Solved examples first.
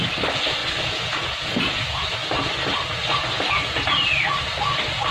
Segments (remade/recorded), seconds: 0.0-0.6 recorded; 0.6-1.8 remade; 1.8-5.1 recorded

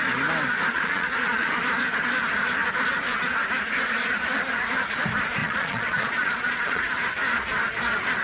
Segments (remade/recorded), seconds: 0.0-0.7 recorded; 0.7-1.5 remade; 1.5-5.4 recorded; 5.4-6.8 remade; 6.8-8.2 recorded

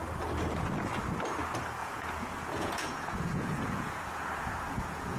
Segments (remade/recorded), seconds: 0.0-1.8 recorded; 1.8-5.2 remade

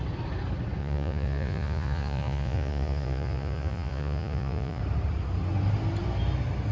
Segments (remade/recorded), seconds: 0.0-0.8 recorded; 0.8-4.8 remade; 4.8-6.7 recorded

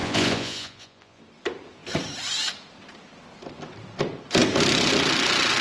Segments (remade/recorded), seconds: 0.0-1.2 remade; 1.2-5.6 recorded

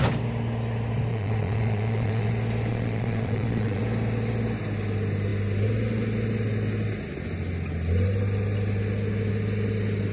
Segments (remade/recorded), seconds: 0.0-1.1 recorded; 1.1-2.3 remade; 2.3-2.7 recorded; 2.7-3.8 remade; 3.8-10.1 recorded

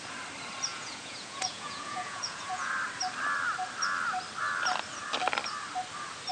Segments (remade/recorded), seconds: 0.0-0.7 recorded; 0.7-2.7 remade; 2.7-6.3 recorded